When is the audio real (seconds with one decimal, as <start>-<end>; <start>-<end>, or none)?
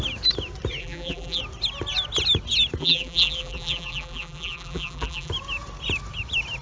0.0-0.8; 1.4-2.8; 5.3-6.6